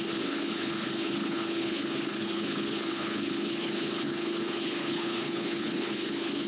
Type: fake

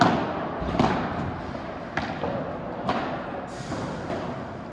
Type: real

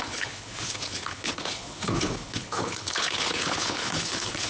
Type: fake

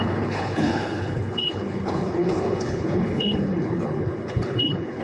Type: fake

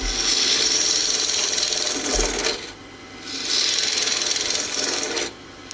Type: real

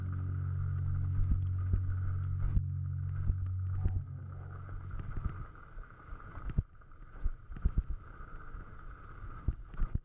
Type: real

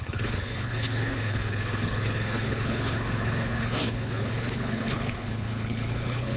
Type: fake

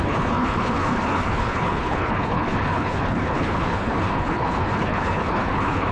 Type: fake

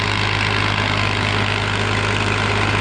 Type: real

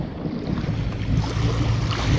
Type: real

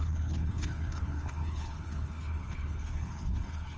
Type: fake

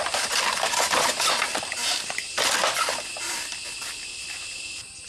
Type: real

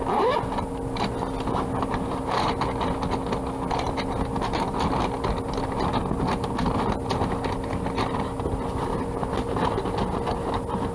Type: real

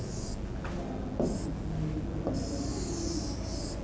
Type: real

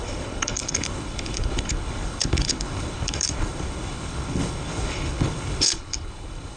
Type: fake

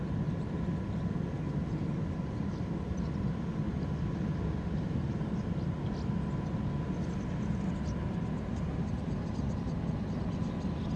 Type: real